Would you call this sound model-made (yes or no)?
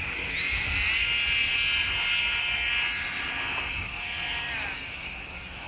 no